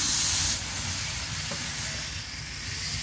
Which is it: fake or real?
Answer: real